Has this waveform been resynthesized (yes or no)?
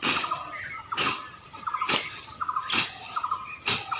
no